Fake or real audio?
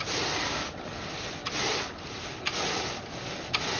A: real